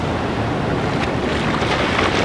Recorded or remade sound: recorded